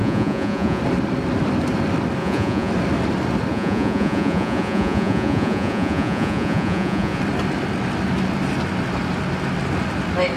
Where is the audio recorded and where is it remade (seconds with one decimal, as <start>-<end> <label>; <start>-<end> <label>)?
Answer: 0.0-0.8 remade; 0.8-2.2 recorded; 2.2-2.7 remade; 2.7-3.5 recorded; 3.5-7.2 remade; 7.2-10.4 recorded